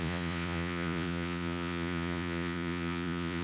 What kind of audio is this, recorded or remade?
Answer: remade